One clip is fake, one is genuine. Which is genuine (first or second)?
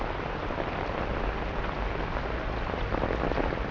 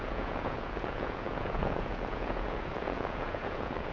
first